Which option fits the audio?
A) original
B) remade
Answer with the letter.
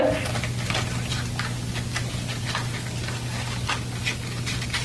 A